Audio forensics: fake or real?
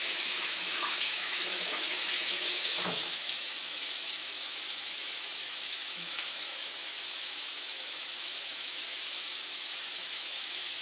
fake